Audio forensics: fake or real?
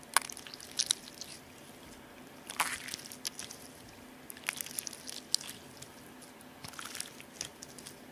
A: real